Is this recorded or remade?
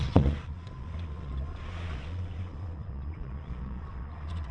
remade